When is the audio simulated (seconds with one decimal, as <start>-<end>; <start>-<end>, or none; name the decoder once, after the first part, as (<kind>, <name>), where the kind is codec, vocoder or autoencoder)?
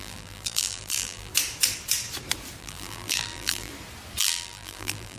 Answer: 0.0-1.3 (vocoder, BigVGAN v2); 2.6-3.7; 4.2-5.2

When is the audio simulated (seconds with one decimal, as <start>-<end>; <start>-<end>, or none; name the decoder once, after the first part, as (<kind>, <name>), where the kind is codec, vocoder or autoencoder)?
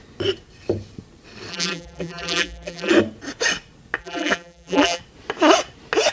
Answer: 1.5-2.9 (vocoder, BigVGAN v2); 4.0-5.0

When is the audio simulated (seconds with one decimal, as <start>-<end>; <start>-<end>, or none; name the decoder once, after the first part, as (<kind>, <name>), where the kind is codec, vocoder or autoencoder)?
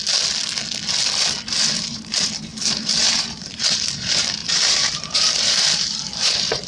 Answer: 1.5-6.7 (vocoder, BigVGAN v2)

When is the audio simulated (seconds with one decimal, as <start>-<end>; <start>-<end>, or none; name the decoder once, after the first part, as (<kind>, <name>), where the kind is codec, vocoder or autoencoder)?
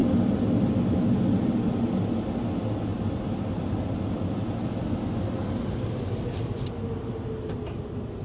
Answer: 2.9-4.6 (vocoder, BigVGAN v2)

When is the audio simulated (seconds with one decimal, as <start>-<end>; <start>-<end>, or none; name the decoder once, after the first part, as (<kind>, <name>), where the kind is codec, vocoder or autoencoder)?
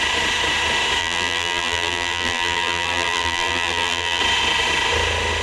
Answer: 1.0-4.2 (vocoder, BigVGAN v2)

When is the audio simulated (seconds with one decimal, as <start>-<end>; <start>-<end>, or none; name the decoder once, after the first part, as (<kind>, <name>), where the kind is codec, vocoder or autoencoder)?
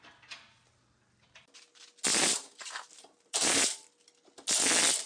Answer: 2.1-3.6 (vocoder, BigVGAN v2)